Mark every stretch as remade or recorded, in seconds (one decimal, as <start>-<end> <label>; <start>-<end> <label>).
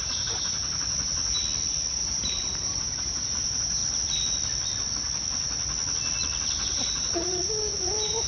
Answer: 0.0-1.2 remade; 1.2-1.9 recorded; 1.9-3.8 remade; 3.8-7.6 recorded; 7.6-8.3 remade